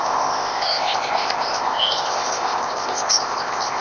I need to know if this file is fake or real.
fake